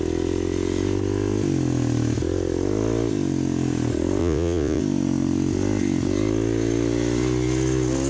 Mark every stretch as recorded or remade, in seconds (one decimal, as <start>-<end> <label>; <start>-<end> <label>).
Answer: 0.0-4.2 recorded; 4.2-4.8 remade; 4.8-8.1 recorded